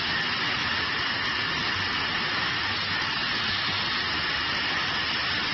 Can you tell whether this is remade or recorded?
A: recorded